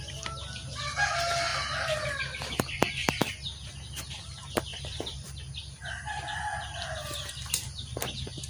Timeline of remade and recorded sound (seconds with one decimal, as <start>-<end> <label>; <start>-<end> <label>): 0.0-1.5 recorded; 1.5-3.3 remade; 3.3-4.7 recorded; 4.7-7.3 remade; 7.3-8.5 recorded